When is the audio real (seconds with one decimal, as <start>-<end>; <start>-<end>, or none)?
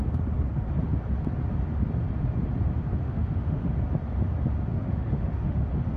0.0-3.0; 3.7-4.7; 5.6-6.0